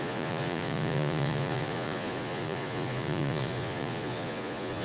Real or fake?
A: fake